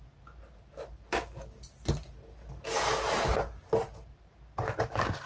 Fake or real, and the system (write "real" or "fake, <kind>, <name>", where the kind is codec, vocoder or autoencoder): real